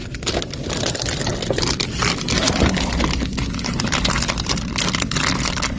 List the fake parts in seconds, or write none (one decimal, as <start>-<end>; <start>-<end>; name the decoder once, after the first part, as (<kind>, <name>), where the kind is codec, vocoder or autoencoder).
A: 0.0-2.0 (vocoder, BigVGAN v2); 5.1-5.8